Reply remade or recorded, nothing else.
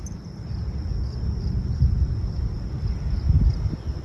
recorded